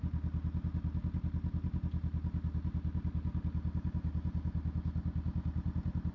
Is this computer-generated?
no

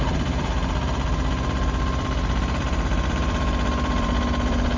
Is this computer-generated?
yes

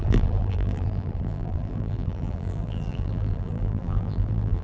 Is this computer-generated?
yes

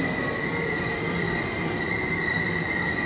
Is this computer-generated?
yes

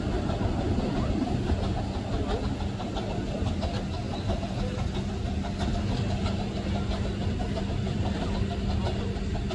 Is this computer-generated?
no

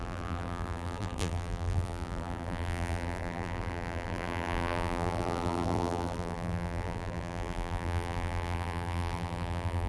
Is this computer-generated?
yes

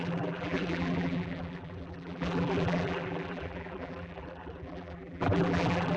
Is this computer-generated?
yes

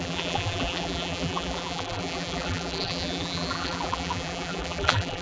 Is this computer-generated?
yes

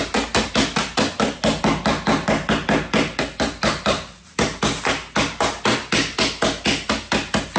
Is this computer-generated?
no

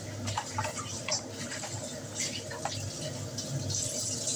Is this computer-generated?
no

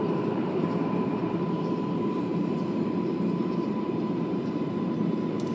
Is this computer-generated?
yes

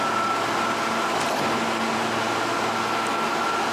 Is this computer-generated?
no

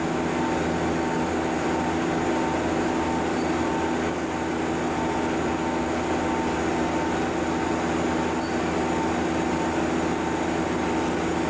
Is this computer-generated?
no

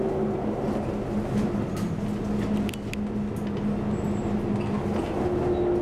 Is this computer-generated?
no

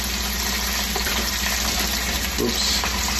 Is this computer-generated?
no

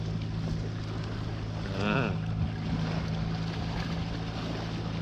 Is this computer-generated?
no